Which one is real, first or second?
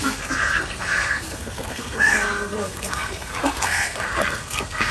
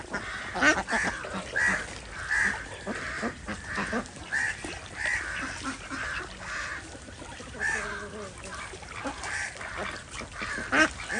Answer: second